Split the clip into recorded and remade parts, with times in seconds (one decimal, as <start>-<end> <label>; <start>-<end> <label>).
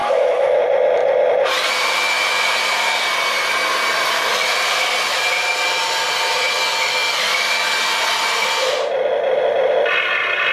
0.0-0.6 remade; 0.6-10.5 recorded